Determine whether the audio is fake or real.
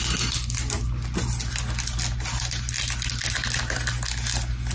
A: real